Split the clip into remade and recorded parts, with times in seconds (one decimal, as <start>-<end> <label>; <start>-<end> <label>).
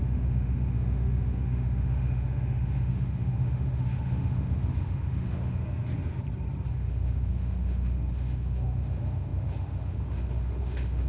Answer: 0.0-5.6 remade; 5.6-6.7 recorded; 6.7-11.1 remade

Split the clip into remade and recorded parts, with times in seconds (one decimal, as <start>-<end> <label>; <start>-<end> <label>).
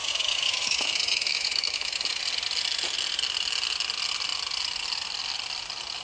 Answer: 0.0-2.2 remade; 2.2-6.0 recorded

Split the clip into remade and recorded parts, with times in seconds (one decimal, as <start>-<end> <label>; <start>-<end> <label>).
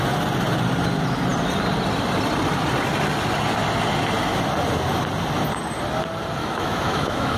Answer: 0.0-6.4 recorded; 6.4-7.4 remade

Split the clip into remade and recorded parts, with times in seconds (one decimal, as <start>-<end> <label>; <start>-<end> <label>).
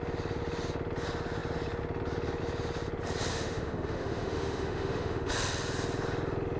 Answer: 0.0-3.3 recorded; 3.3-5.3 remade; 5.3-6.6 recorded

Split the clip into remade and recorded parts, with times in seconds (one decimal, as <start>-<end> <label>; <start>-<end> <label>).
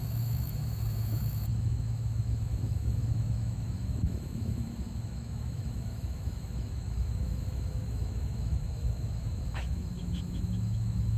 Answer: 0.0-11.2 remade